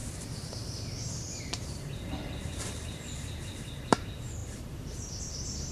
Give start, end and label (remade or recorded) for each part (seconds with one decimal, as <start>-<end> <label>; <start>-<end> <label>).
0.0-5.7 remade